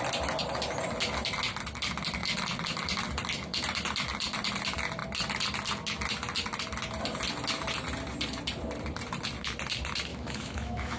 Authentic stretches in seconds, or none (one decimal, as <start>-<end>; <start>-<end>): 0.0-10.1